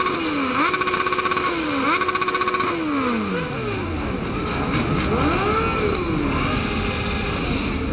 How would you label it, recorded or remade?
recorded